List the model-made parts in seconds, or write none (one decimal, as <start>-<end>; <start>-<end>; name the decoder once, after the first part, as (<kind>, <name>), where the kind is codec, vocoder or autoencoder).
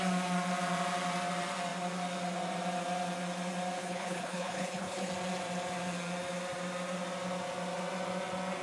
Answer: 3.8-5.1 (codec, HILCodec)